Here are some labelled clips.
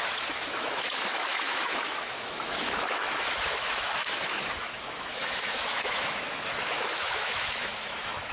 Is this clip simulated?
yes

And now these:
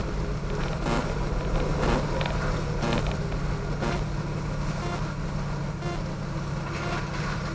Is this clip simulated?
no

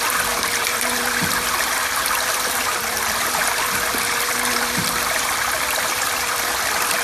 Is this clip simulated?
yes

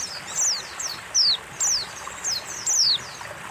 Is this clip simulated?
no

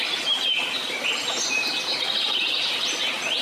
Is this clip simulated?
no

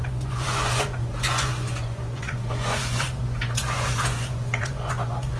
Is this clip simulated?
yes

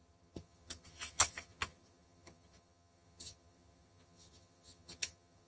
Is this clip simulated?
yes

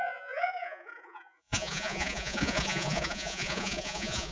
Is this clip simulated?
yes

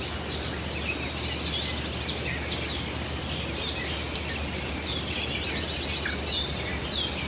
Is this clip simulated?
no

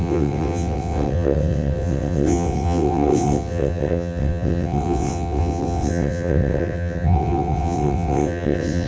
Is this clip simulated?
yes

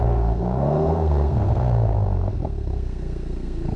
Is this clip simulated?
yes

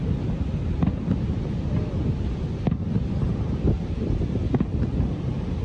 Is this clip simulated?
no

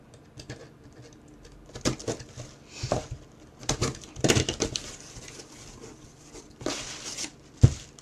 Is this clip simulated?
yes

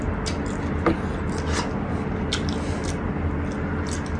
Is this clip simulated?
no